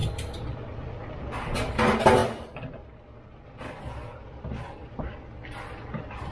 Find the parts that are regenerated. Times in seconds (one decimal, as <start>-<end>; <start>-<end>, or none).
none